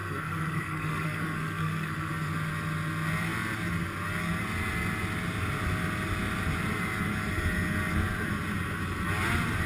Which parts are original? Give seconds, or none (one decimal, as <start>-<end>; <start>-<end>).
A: 2.1-9.7